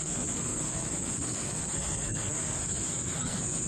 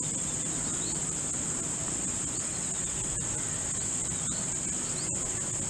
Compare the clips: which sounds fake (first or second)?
first